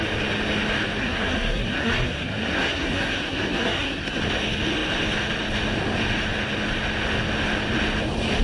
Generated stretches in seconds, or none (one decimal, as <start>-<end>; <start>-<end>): 1.0-4.2